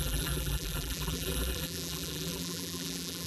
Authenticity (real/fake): fake